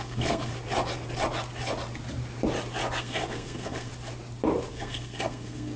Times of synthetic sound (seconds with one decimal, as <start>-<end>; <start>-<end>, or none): 0.0-0.5; 3.0-3.9; 4.7-5.8